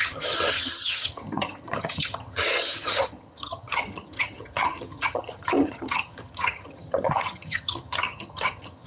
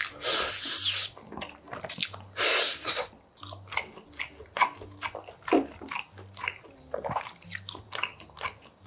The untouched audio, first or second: second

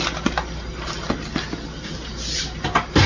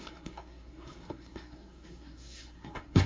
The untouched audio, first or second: first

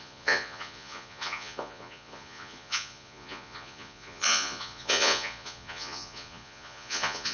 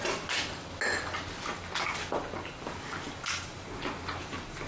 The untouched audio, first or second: second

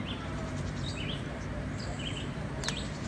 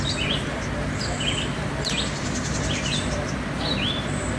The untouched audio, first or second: second